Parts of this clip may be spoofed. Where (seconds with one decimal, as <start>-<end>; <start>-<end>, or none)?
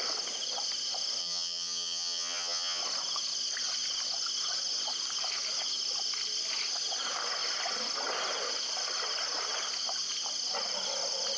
1.2-2.8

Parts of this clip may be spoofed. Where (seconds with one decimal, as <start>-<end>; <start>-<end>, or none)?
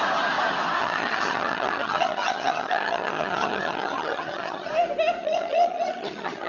0.8-4.7; 5.2-6.5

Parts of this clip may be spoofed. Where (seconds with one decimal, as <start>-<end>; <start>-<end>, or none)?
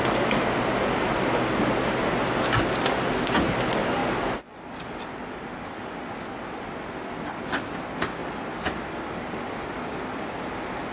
none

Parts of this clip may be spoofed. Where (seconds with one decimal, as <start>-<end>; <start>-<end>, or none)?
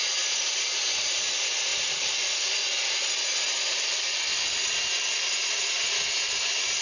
none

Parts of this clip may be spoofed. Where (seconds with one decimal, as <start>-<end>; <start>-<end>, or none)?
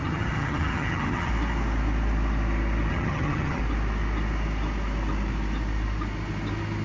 0.0-1.3; 2.9-3.6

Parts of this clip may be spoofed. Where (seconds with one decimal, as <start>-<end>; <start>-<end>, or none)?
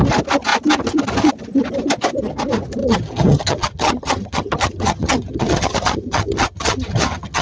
2.8-7.4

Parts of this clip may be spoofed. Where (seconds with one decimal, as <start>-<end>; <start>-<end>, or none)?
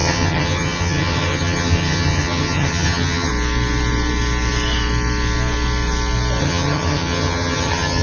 0.0-3.3; 6.4-8.0